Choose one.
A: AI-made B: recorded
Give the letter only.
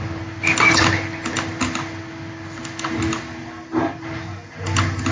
B